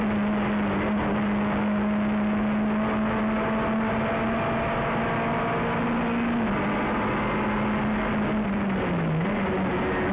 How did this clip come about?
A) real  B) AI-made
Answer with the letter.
A